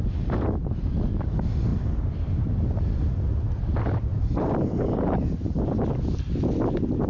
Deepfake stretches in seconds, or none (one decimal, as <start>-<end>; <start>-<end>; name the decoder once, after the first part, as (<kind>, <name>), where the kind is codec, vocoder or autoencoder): 4.1-5.7 (vocoder, BigVGAN v2)